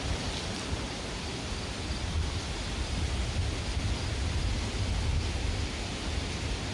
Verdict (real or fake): real